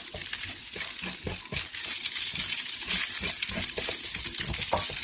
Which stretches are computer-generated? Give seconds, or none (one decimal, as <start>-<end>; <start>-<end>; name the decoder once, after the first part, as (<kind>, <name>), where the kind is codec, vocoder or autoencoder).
none

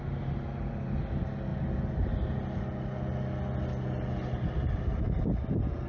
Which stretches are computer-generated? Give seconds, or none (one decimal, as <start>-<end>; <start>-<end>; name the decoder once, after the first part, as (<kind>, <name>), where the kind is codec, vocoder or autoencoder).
none

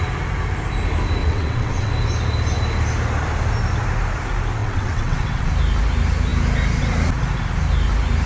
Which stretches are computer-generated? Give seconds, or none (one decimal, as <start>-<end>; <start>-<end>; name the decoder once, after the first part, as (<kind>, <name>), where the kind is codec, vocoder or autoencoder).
1.2-1.9 (vocoder, WaveNeXt); 4.6-5.5